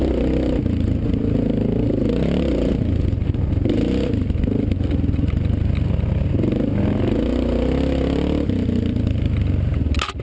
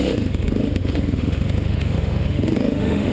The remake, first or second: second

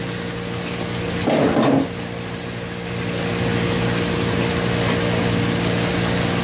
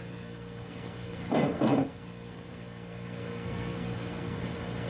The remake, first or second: second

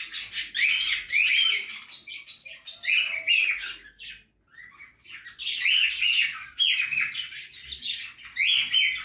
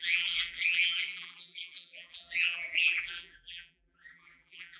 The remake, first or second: second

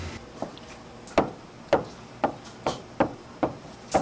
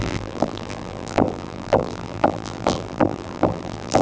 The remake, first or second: second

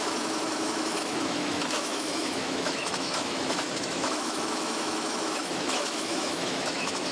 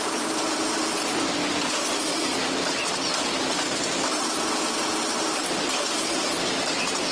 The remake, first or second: first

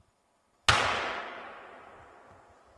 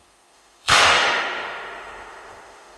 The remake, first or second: second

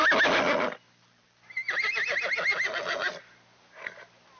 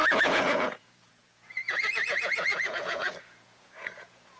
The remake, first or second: second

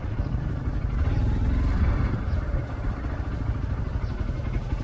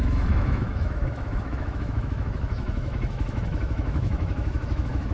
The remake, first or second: second